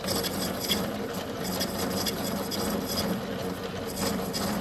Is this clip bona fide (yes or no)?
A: yes